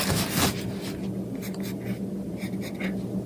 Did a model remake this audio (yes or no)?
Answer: no